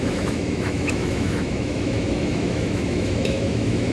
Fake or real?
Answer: fake